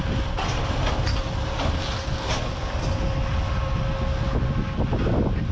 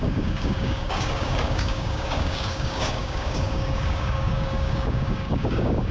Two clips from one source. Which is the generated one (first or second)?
second